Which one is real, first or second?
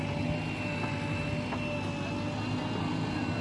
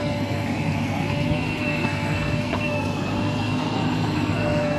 first